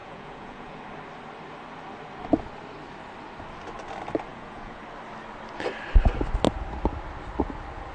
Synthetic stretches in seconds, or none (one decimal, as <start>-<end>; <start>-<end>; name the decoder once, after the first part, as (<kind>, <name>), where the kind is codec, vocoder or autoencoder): 0.0-0.8 (vocoder, Vocos); 4.3-4.8